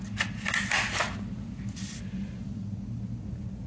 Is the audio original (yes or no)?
yes